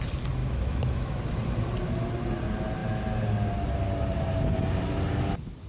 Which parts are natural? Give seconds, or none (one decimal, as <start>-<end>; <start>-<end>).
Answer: 0.0-0.4; 1.2-5.7